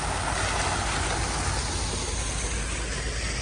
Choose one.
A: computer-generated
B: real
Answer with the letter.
B